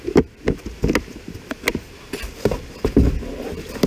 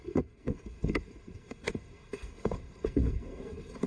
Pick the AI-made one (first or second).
second